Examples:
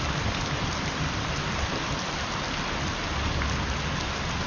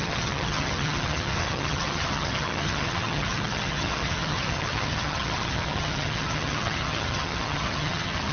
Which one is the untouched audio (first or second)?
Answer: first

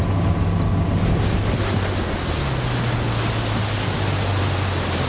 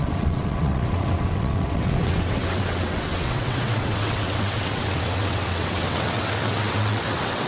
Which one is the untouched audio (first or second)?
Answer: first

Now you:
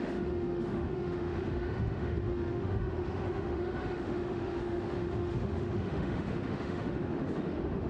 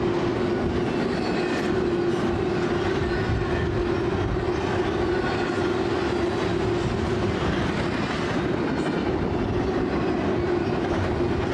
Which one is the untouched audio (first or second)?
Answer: second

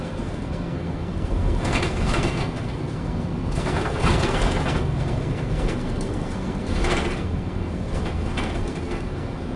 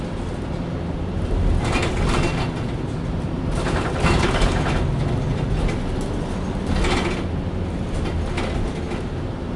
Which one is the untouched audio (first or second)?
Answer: second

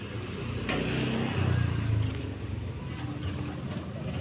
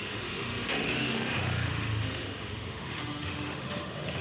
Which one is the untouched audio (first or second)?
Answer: first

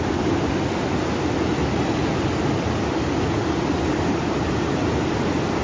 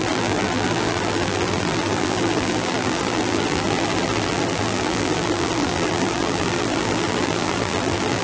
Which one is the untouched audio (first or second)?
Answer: first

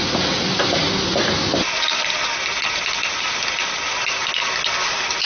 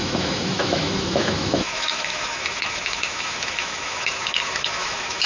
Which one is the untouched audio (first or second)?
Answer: first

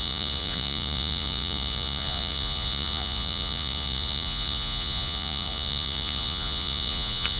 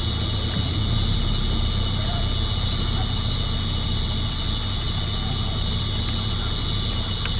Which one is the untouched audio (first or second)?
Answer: second